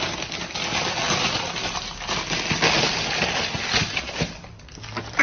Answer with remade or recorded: recorded